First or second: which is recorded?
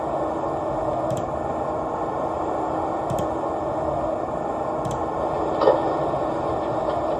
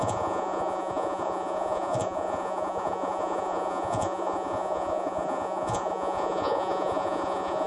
first